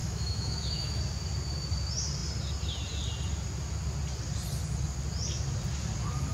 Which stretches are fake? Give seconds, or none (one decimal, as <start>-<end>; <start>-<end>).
0.0-1.0